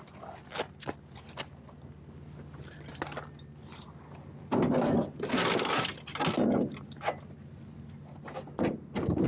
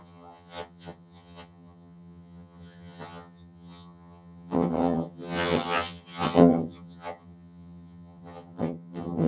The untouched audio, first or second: first